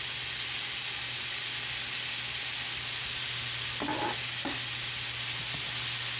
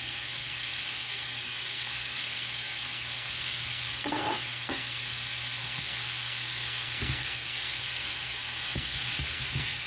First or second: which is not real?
second